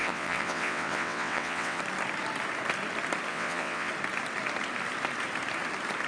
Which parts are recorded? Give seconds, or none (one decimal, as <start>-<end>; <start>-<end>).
1.8-3.3; 3.9-6.1